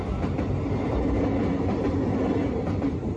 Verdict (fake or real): real